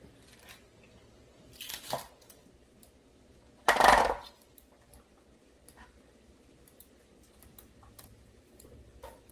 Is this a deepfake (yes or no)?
no